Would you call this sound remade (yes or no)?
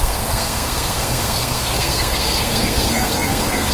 yes